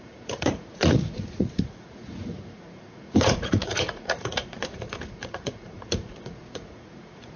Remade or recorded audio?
remade